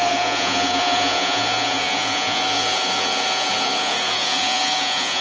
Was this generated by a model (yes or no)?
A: yes